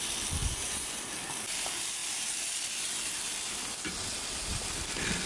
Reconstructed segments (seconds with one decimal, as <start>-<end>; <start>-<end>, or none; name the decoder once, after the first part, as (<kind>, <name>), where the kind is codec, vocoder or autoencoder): 0.4-1.0 (vocoder, Vocos)